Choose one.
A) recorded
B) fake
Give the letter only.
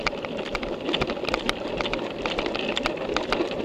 A